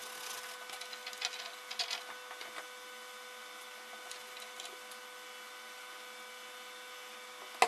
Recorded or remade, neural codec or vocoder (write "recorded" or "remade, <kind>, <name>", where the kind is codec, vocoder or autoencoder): recorded